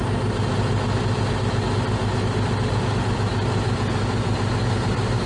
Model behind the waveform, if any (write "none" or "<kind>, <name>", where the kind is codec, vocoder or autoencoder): none